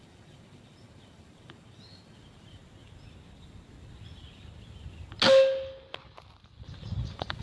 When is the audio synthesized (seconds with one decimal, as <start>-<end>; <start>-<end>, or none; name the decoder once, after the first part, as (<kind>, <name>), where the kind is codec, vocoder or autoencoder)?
0.0-2.6 (vocoder, BigVGAN v2); 7.0-7.4

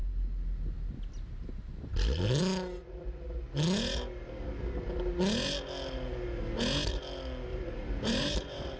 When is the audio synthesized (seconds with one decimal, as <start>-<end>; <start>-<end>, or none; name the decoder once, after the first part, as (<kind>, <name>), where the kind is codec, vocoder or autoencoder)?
7.5-8.8 (vocoder, BigVGAN v2)